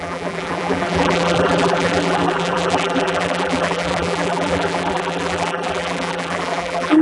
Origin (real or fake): fake